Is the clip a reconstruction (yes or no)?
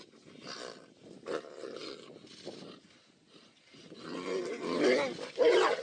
no